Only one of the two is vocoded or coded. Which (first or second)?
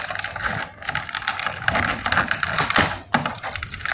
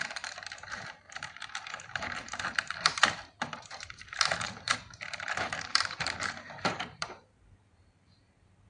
second